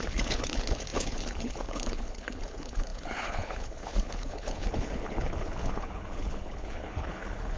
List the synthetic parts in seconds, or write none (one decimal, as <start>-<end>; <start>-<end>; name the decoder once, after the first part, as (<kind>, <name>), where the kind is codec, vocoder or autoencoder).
0.0-7.6 (codec, HILCodec)